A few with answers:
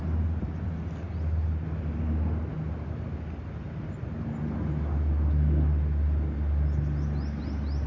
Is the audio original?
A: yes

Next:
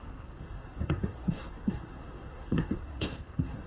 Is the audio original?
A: no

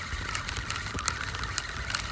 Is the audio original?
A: yes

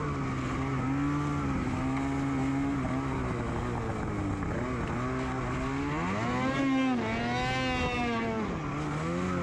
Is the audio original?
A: yes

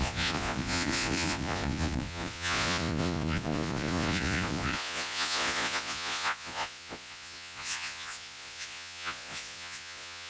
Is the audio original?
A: no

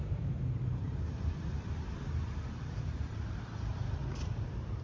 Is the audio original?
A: no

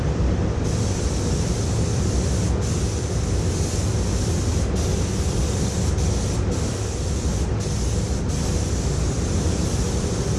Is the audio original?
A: no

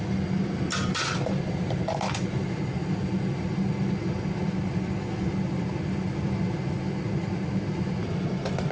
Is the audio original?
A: yes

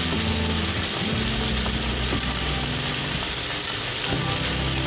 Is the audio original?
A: yes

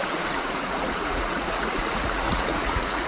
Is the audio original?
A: no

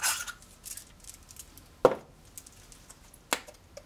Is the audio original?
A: yes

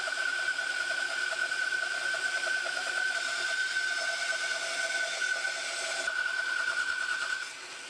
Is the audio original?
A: yes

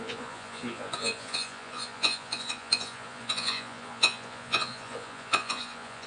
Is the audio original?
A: no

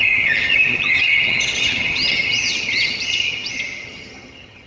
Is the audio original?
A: no